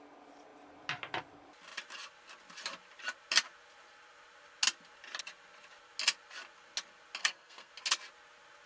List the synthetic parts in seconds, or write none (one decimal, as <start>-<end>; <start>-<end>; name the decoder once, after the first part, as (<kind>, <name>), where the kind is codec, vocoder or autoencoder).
7.2-7.7 (codec, SNAC)